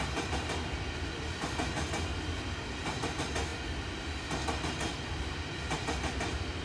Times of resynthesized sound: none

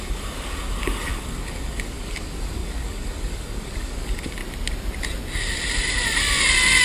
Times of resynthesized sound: 0.0-4.4 (codec, DAC)

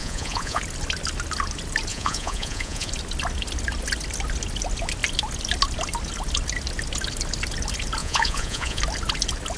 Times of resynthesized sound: 0.0-0.6 (vocoder, Vocos); 1.9-2.9; 8.0-8.8

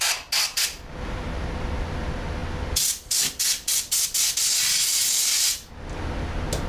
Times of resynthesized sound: none

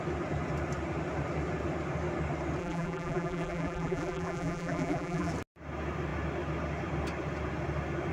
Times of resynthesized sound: 2.6-5.3 (vocoder, BigVGAN v2)

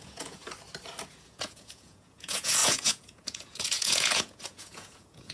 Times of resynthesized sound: 0.0-0.4 (vocoder, Vocos); 1.1-5.3

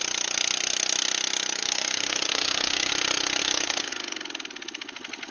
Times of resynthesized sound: 1.6-2.9 (codec, DAC); 3.4-3.9